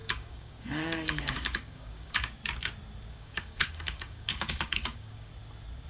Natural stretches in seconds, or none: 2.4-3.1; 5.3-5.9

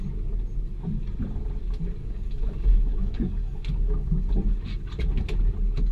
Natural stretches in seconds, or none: 0.0-2.0; 4.3-5.9

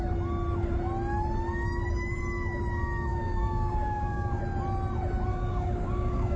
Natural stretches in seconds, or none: 0.0-3.1; 4.4-5.3

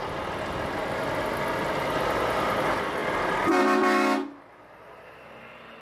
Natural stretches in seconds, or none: 0.0-5.8

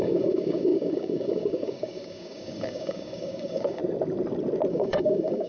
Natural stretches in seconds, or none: 3.8-4.7

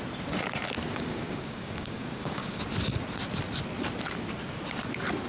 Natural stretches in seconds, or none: 0.0-0.9; 2.6-5.3

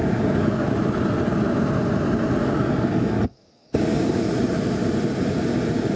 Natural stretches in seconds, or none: 0.7-2.4; 4.2-6.0